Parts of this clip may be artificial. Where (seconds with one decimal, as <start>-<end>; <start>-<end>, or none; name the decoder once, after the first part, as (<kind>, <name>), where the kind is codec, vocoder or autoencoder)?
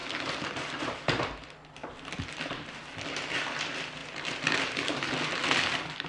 none